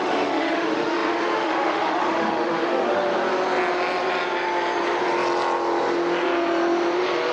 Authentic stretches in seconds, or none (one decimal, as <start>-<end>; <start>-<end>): 3.1-7.3